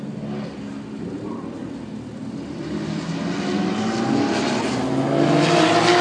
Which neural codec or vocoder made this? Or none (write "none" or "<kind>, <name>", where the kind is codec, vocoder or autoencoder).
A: none